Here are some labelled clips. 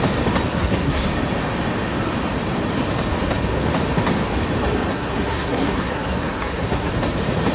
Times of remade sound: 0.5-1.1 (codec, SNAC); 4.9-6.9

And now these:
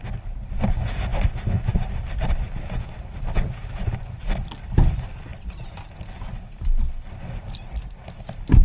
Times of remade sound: none

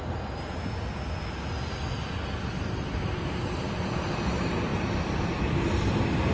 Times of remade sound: none

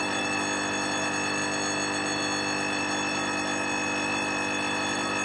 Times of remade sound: none